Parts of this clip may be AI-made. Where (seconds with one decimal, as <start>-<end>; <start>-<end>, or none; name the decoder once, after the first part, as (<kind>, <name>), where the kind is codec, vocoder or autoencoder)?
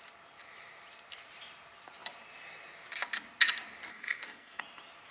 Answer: 3.9-4.6 (codec, SNAC)